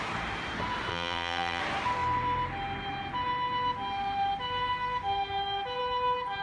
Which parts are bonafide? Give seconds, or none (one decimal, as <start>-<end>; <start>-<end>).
0.0-0.9; 1.6-6.4